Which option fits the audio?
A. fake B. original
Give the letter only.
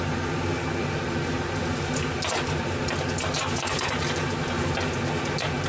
B